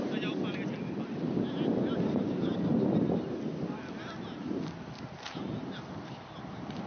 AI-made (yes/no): no